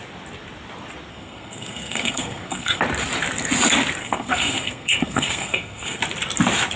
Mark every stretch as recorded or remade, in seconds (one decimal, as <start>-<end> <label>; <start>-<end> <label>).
0.0-1.1 recorded; 1.1-2.8 remade; 2.8-4.0 recorded; 4.0-6.0 remade; 6.0-6.8 recorded